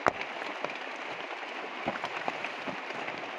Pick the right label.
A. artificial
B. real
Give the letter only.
B